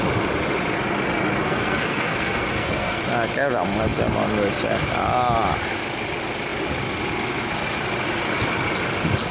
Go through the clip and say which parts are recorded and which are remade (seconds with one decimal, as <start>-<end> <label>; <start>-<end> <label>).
0.0-1.4 recorded; 1.4-3.0 remade; 3.0-9.3 recorded